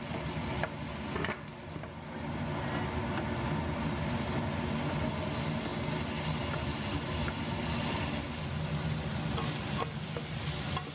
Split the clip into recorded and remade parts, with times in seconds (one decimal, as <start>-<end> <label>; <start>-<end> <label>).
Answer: 0.0-10.9 recorded